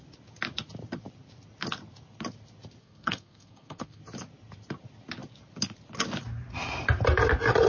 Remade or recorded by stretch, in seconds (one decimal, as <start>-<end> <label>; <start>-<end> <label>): 0.0-2.8 recorded; 2.8-4.0 remade; 4.0-7.7 recorded